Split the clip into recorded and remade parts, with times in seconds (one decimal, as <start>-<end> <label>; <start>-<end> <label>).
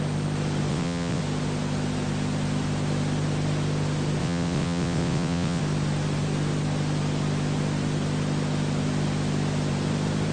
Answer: 0.0-0.7 recorded; 0.7-1.2 remade; 1.2-4.2 recorded; 4.2-5.6 remade; 5.6-10.3 recorded